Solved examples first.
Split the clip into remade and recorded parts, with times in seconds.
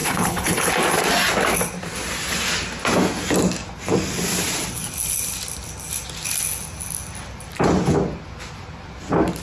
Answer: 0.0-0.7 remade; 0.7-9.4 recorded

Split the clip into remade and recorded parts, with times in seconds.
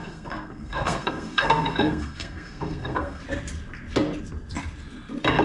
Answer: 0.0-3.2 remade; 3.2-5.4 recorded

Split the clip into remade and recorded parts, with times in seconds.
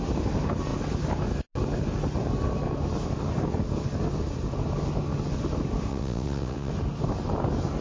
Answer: 0.0-5.9 recorded; 5.9-6.7 remade; 6.7-7.8 recorded